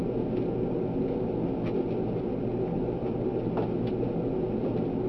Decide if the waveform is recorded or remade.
recorded